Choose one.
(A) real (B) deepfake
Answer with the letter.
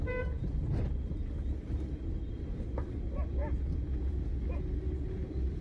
A